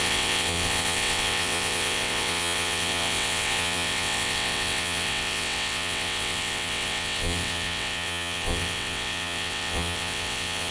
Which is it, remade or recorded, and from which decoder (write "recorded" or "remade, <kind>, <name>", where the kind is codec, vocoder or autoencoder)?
remade, vocoder, WaveNeXt